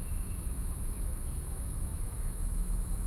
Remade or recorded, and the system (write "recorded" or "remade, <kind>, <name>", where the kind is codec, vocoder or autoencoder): remade, autoencoder, DAC-VAE